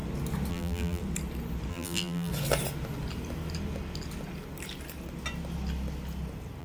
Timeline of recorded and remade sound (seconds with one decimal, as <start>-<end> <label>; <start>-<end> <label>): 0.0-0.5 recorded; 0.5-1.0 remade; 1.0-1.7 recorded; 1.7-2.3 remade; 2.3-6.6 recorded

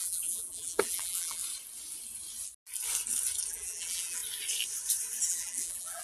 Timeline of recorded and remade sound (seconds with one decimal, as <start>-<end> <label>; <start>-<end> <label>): 0.0-1.4 remade; 1.4-3.5 recorded; 3.5-4.2 remade; 4.2-5.2 recorded; 5.2-6.0 remade

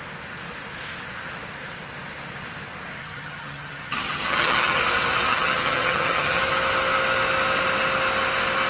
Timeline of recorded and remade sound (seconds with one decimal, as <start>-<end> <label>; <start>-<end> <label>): 0.0-3.0 recorded; 3.0-4.8 remade; 4.8-5.3 recorded; 5.3-6.4 remade; 6.4-8.7 recorded